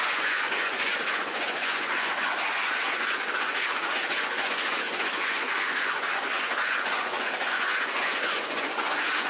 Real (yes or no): no